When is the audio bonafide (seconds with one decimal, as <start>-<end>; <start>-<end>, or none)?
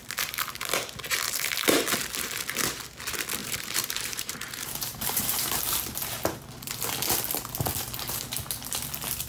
0.0-3.4; 5.8-9.3